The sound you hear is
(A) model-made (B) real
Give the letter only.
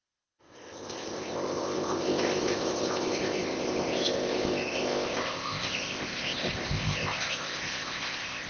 A